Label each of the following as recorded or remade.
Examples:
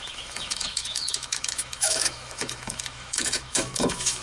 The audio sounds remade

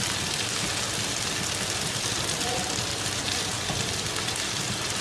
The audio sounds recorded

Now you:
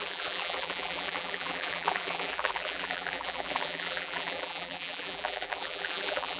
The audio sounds remade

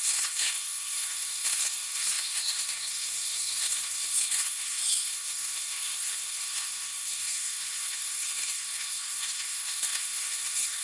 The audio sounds remade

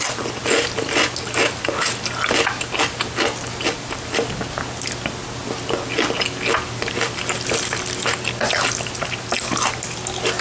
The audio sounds recorded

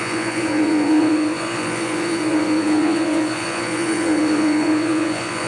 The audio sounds remade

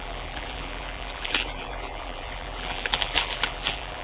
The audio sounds remade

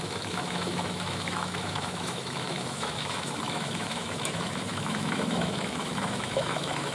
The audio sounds remade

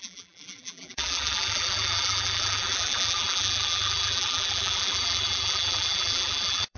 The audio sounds remade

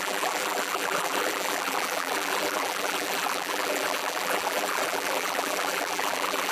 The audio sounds remade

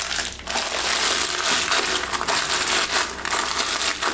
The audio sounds recorded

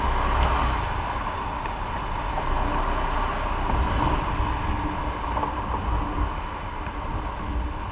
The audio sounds recorded